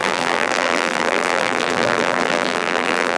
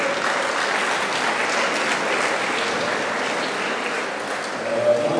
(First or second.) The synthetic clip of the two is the first